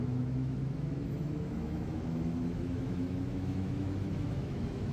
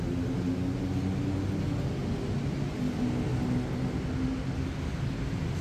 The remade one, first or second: first